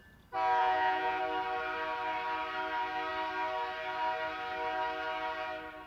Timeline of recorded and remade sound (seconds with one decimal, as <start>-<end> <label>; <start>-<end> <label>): 0.0-0.6 recorded; 0.6-1.2 remade; 1.2-5.9 recorded

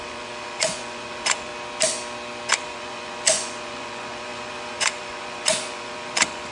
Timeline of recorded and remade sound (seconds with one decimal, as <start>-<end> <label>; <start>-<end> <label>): 0.0-1.5 remade; 1.5-2.5 recorded; 2.5-6.5 remade

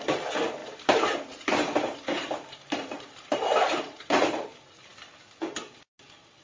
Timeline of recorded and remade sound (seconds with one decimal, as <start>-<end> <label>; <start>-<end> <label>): 0.0-0.6 recorded; 0.6-4.4 remade; 4.4-6.4 recorded

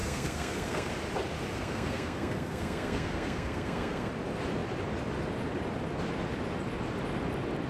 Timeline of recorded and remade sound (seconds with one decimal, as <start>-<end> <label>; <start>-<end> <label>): 0.0-0.9 remade; 0.9-1.5 recorded; 1.5-4.1 remade; 4.1-7.7 recorded

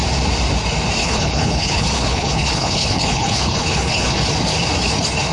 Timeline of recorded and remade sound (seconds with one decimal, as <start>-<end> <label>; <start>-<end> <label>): 0.0-1.0 recorded; 1.0-4.2 remade; 4.2-5.3 recorded

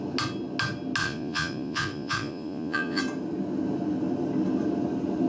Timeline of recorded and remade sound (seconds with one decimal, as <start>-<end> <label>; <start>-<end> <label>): 0.0-1.0 recorded; 1.0-3.0 remade; 3.0-5.3 recorded

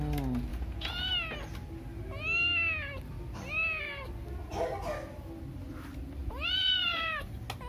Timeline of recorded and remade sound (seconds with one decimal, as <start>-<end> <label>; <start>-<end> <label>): 0.0-0.5 recorded; 0.5-1.1 remade; 1.1-6.2 recorded; 6.2-7.3 remade; 7.3-7.7 recorded